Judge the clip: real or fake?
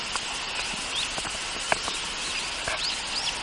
real